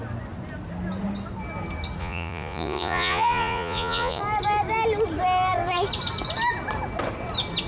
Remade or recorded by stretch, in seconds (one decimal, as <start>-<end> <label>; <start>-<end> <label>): 0.0-2.0 recorded; 2.0-4.2 remade; 4.2-7.7 recorded